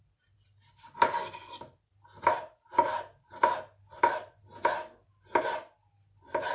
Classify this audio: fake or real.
real